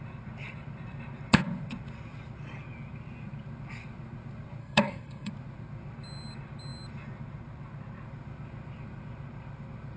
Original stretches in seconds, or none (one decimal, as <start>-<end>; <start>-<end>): 0.0-4.6; 5.3-10.0